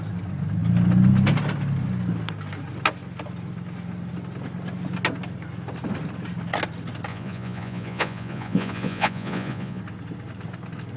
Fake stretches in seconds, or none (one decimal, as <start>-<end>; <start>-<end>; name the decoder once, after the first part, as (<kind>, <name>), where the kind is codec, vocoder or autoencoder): 7.1-9.8 (vocoder, Vocos)